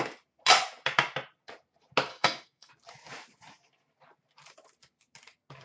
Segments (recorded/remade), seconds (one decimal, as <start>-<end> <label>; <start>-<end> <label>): 0.0-2.1 recorded; 2.1-2.7 remade; 2.7-5.6 recorded